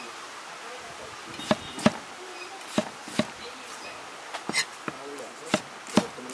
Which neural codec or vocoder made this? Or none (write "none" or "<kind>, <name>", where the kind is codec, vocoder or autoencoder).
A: none